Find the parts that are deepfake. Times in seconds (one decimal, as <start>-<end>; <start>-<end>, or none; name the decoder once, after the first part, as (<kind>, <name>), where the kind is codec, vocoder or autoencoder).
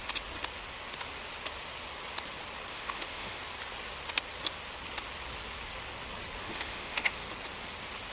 2.7-3.4 (autoencoder, DAC-VAE); 6.4-7.2